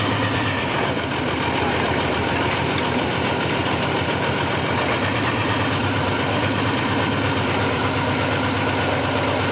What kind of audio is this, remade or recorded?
remade